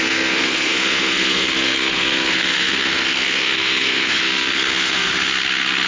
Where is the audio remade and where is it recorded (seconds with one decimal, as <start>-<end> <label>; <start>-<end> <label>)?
0.0-5.1 remade; 5.1-5.9 recorded